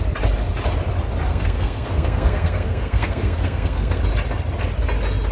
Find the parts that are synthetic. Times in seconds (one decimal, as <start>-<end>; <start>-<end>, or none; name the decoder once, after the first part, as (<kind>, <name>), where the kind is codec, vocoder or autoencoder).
1.3-4.0 (codec, SNAC)